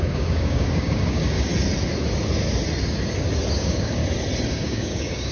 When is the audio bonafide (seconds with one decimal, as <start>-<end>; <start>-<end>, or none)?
1.5-3.5; 4.0-4.5